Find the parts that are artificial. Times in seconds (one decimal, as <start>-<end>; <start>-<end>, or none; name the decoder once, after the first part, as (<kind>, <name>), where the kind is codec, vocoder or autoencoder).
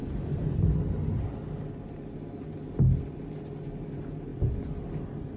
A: none